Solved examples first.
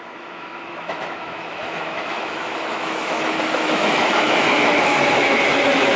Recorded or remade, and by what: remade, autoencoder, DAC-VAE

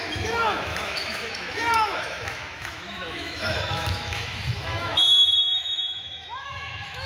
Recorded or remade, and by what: remade, autoencoder, DAC-VAE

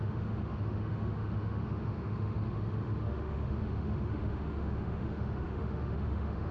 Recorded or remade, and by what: remade, autoencoder, DAC-VAE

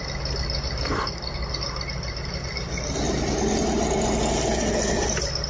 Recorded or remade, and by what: recorded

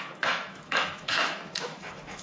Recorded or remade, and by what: remade, autoencoder, DAC-VAE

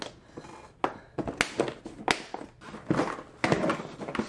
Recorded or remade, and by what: recorded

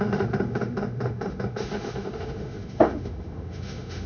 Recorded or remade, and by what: remade, autoencoder, DAC-VAE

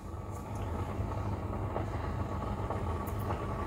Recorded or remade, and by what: recorded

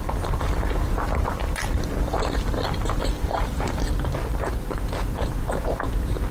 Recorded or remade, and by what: recorded